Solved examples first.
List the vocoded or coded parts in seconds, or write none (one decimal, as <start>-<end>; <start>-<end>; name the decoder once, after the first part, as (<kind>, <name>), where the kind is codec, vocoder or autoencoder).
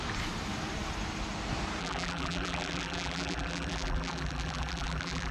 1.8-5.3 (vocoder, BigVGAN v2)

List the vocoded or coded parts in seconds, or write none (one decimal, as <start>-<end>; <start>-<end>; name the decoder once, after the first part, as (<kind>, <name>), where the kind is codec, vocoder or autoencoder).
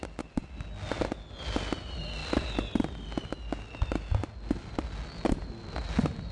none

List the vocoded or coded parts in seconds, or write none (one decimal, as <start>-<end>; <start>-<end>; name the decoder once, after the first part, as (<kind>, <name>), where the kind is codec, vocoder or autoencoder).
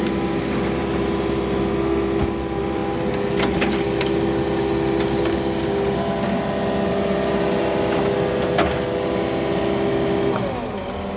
none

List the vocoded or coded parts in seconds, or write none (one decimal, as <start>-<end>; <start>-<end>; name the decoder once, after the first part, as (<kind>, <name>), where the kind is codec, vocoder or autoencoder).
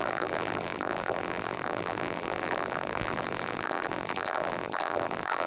0.0-5.5 (vocoder, BigVGAN v2)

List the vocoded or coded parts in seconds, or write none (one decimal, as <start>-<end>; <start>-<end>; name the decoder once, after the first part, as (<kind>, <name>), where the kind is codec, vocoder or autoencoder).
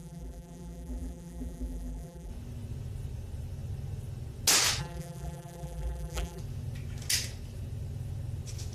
0.0-2.3 (vocoder, BigVGAN v2); 4.8-6.4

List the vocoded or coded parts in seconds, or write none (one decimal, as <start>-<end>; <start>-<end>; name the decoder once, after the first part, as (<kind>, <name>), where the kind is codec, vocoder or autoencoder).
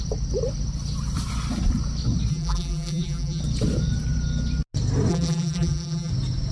2.3-3.4 (vocoder, BigVGAN v2); 5.1-6.1